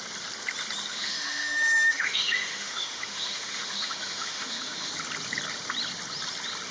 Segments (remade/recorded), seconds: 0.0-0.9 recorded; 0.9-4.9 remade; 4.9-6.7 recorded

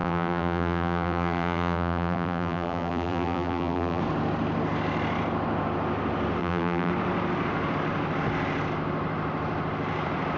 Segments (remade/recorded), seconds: 0.0-4.0 remade; 4.0-6.4 recorded; 6.4-6.9 remade; 6.9-10.4 recorded

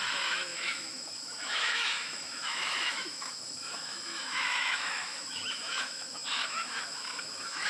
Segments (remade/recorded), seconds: 0.0-7.7 remade

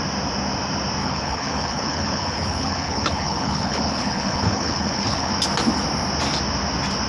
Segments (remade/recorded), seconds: 0.0-1.0 recorded; 1.0-5.3 remade; 5.3-7.1 recorded

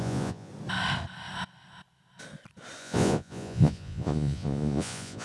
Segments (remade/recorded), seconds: 0.0-0.5 remade; 0.5-2.8 recorded; 2.8-5.2 remade